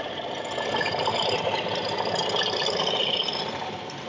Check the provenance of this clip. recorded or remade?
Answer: remade